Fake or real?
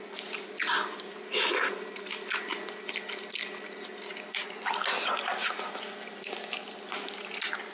real